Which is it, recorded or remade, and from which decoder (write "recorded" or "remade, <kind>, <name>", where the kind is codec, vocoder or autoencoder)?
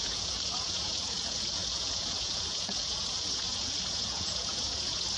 remade, vocoder, Vocos